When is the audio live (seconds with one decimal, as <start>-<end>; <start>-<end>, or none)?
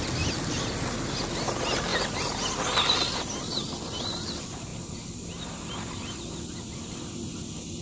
0.0-7.8